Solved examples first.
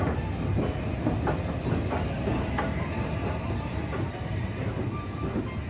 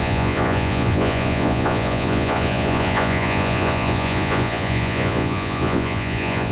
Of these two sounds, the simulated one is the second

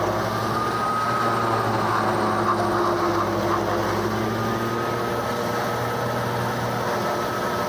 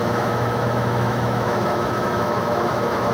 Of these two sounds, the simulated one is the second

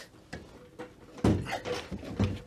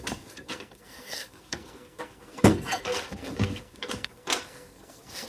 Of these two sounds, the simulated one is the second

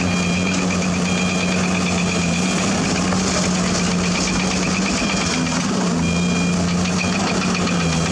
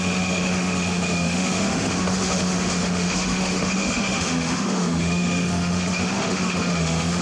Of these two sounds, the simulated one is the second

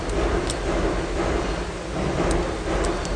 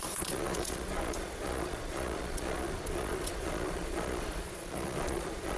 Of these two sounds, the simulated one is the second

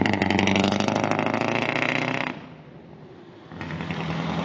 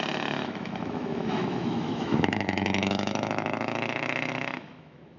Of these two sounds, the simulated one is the second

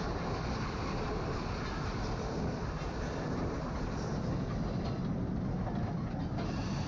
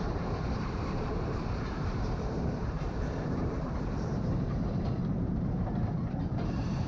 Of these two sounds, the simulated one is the second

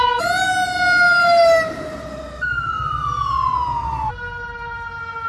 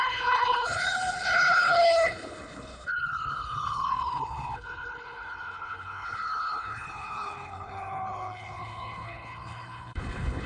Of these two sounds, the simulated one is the second